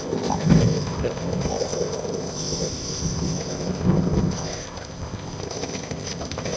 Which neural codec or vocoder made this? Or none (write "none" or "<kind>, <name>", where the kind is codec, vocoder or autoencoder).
codec, ZipCodec